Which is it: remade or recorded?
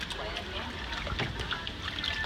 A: recorded